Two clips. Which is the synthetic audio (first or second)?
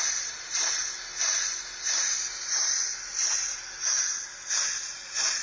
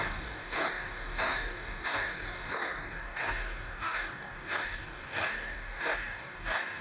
second